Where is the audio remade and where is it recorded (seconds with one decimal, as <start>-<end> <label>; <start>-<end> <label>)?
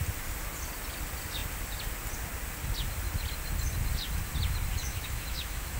0.0-4.8 recorded; 4.8-5.8 remade